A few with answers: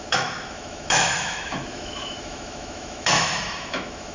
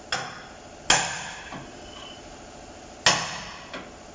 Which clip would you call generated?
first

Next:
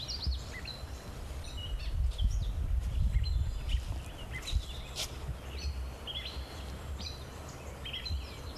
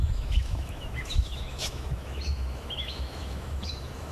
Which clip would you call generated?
second